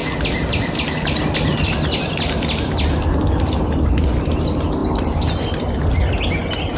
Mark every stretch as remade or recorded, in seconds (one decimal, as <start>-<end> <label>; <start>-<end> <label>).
0.0-6.8 recorded